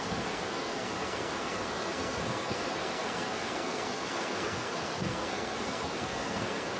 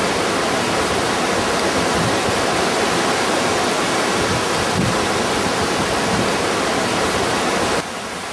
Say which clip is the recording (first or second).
second